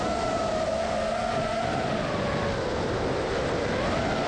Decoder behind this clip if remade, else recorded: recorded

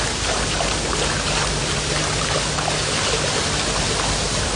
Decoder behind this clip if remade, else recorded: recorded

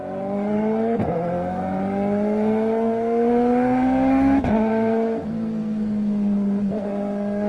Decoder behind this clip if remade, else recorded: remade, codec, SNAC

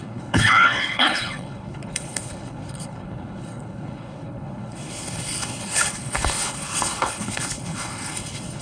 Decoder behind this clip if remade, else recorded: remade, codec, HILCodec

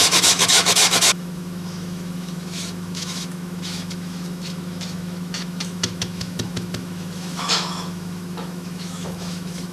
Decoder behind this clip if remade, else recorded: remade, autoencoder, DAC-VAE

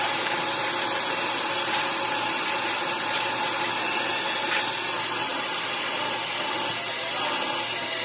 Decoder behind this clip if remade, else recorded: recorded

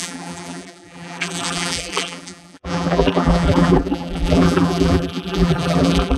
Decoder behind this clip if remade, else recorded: remade, vocoder, BigVGAN v2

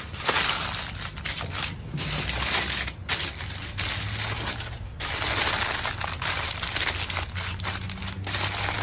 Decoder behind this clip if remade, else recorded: recorded